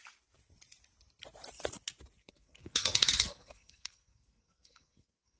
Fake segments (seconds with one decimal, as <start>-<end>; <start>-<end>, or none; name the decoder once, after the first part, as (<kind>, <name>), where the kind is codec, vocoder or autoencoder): 2.2-5.4 (codec, SNAC)